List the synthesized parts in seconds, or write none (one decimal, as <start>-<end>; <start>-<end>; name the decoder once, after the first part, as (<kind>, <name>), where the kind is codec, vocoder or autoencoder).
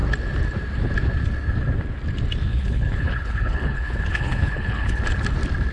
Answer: 2.5-5.0 (codec, HILCodec)